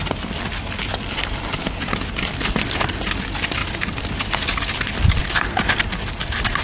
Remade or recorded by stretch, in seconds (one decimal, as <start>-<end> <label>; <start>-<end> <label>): 0.0-6.6 recorded